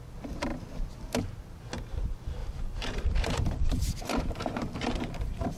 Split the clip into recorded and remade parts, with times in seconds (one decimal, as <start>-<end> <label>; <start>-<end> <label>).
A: 0.0-2.4 recorded; 2.4-5.6 remade